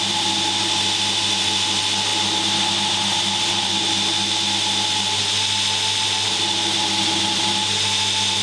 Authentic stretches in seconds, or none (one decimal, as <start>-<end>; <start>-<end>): 0.0-8.4